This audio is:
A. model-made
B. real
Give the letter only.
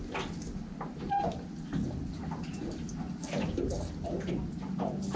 B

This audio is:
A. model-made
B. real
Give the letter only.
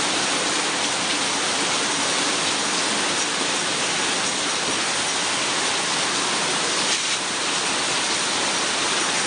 B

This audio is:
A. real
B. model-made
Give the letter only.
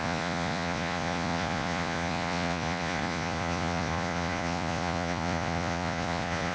B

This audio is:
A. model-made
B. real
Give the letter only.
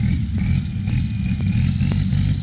B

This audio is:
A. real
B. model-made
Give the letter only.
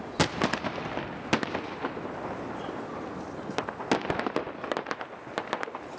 A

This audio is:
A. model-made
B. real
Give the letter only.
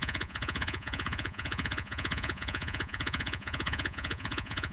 A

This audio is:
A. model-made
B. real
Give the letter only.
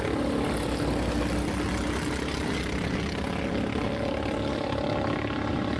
B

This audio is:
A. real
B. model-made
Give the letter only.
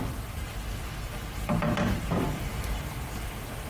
A